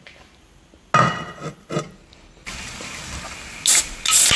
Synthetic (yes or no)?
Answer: no